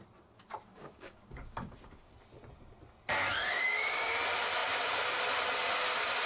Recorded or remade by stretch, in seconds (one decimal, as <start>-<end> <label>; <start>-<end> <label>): 0.0-0.7 recorded; 0.7-2.1 remade; 2.1-3.3 recorded; 3.3-4.1 remade; 4.1-6.3 recorded